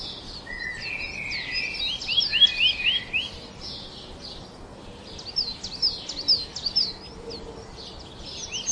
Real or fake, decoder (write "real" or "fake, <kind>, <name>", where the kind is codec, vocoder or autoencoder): real